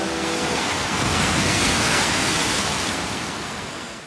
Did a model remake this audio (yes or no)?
yes